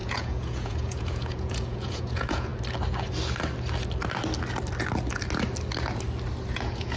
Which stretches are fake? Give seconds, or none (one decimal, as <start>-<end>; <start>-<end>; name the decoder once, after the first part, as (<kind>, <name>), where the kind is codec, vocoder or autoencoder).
0.0-2.5 (vocoder, Vocos); 6.5-7.0